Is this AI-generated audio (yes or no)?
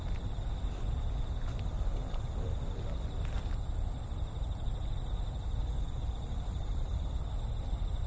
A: no